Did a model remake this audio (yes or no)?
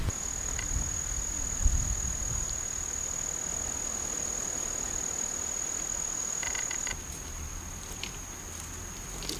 no